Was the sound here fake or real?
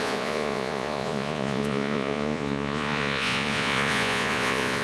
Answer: fake